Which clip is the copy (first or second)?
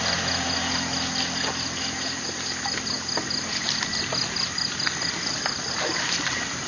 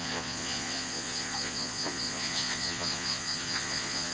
second